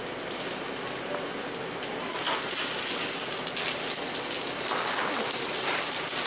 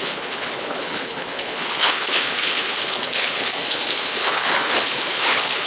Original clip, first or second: first